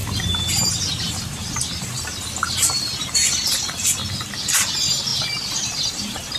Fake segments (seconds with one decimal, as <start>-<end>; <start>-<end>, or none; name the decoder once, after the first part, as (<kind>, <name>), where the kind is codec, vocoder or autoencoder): 0.0-2.8 (vocoder, BigVGAN v2); 5.1-6.4